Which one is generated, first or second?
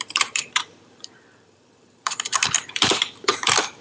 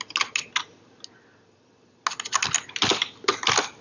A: first